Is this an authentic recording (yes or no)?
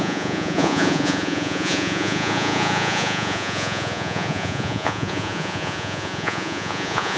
no